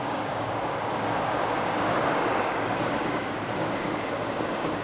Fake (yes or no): yes